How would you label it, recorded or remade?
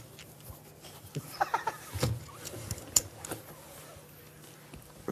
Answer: recorded